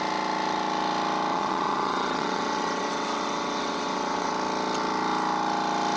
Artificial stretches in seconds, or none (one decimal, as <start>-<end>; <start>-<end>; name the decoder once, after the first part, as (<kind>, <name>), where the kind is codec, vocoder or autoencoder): 1.3-4.3 (vocoder, WaveNeXt)